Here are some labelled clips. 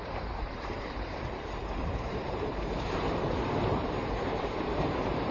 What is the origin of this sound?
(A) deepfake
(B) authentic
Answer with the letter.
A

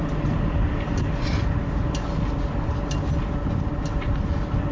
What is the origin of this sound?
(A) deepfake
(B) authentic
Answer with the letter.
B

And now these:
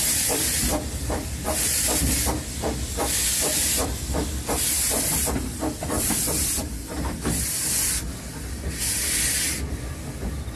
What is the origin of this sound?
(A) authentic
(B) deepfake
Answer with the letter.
A